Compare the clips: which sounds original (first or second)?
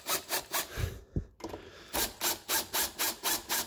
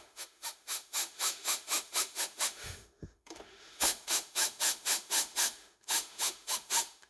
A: first